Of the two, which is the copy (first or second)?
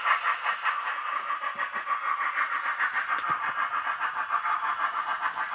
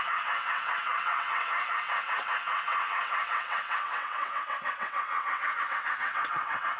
second